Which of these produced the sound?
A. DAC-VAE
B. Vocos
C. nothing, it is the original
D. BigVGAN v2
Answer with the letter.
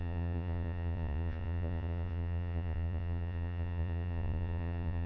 B